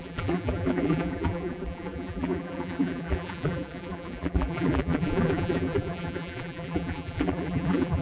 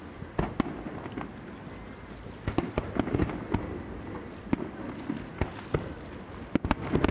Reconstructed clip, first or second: first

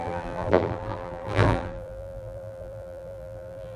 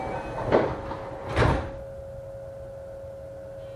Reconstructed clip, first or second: first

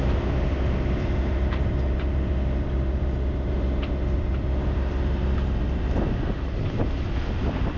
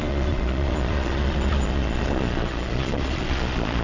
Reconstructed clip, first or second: second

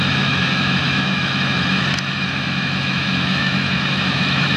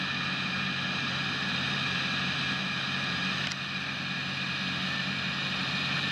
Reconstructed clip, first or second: first